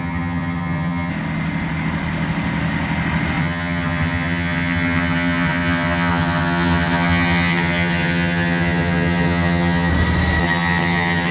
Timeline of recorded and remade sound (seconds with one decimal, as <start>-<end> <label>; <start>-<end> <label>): 0.0-1.1 remade; 1.1-3.4 recorded; 3.4-9.9 remade; 9.9-10.4 recorded; 10.4-11.3 remade